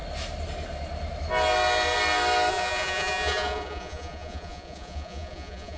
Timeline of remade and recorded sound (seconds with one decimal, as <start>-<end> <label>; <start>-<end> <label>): 0.0-2.5 recorded; 2.5-5.8 remade